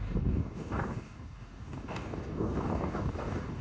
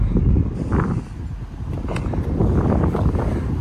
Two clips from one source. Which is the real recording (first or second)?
second